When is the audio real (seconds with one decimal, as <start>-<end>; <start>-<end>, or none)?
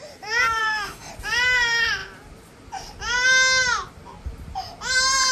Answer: 0.0-0.6; 1.1-5.3